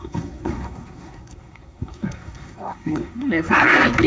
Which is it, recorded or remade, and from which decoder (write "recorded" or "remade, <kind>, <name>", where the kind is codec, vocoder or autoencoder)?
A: remade, codec, SNAC